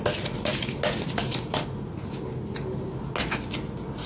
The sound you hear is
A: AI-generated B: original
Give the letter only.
B